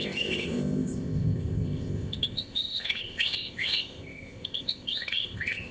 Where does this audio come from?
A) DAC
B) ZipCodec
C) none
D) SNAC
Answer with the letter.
B